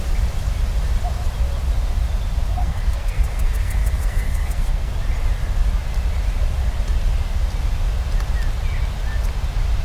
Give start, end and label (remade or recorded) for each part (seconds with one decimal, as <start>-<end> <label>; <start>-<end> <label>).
0.0-2.5 recorded; 2.5-4.9 remade; 4.9-9.8 recorded